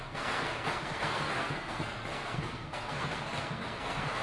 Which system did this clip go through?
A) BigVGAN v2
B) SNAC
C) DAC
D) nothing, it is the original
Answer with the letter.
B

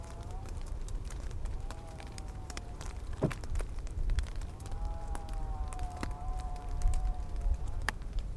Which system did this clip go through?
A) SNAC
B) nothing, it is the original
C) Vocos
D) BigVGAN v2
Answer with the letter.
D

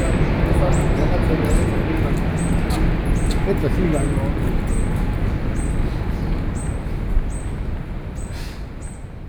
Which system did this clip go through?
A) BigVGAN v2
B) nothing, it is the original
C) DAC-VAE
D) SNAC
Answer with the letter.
B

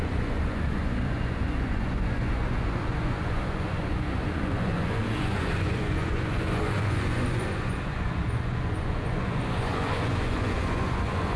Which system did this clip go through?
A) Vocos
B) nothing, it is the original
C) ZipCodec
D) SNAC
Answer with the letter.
A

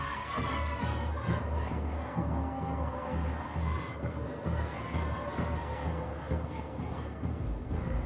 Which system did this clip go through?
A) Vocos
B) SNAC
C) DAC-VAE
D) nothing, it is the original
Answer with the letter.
B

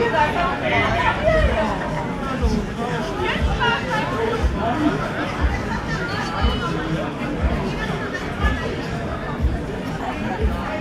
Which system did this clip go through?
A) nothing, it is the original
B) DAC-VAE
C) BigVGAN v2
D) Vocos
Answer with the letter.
A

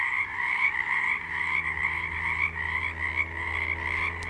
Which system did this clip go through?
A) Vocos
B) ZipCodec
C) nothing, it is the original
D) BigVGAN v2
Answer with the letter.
C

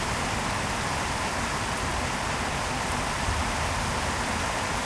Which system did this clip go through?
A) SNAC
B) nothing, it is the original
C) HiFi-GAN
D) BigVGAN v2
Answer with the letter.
B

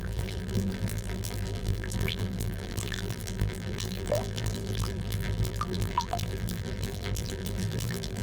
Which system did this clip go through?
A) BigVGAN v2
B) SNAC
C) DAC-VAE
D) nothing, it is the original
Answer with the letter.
A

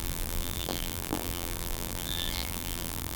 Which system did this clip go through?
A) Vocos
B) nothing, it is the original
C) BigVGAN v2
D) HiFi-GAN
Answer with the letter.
C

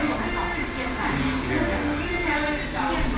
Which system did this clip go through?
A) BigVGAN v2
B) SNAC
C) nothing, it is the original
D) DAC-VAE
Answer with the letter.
C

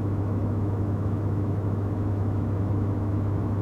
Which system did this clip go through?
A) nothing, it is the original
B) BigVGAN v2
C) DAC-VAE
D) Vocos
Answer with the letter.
C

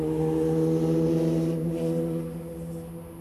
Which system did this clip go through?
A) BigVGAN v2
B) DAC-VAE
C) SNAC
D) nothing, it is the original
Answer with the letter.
D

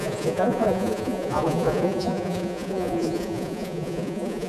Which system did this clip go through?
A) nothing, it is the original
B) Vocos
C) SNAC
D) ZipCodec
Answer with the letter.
B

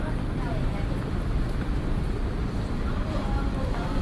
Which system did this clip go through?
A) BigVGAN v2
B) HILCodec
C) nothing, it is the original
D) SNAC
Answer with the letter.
C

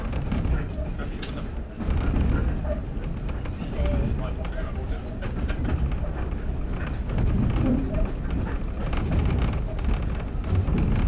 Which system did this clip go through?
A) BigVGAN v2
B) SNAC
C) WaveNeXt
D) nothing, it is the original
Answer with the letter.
D